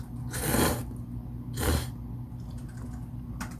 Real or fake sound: real